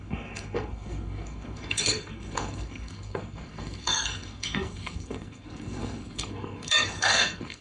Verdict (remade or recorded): remade